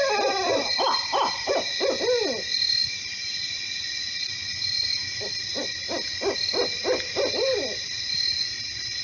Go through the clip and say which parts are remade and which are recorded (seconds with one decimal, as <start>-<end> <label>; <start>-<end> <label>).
0.0-0.5 recorded; 0.5-1.5 remade; 1.5-9.0 recorded